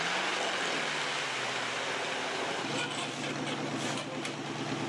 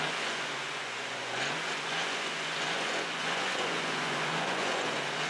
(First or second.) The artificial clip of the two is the second